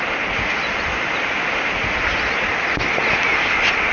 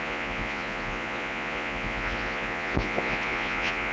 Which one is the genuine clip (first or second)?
first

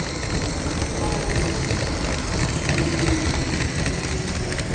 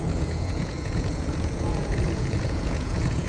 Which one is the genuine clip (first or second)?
first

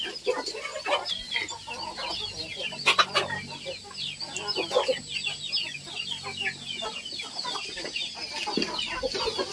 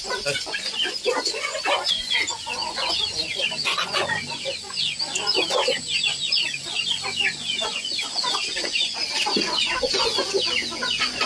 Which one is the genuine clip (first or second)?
first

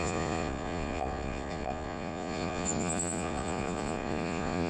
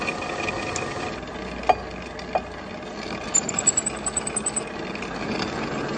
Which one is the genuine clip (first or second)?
second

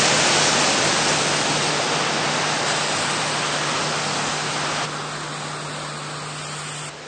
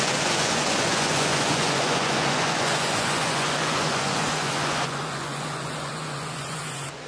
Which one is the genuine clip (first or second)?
first